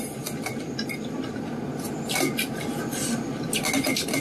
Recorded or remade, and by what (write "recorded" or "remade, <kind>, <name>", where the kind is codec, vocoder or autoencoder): recorded